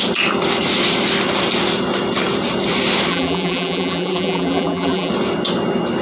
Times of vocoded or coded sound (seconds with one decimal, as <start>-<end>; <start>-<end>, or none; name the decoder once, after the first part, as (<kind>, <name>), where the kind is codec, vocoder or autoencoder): 3.1-5.1 (vocoder, BigVGAN v2)